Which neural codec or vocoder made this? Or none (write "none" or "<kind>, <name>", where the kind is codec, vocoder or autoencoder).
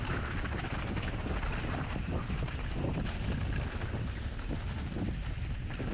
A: none